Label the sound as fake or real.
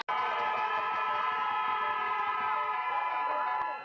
real